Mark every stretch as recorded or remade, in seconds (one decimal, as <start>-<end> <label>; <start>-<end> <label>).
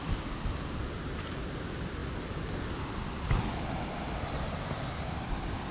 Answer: 0.0-5.7 recorded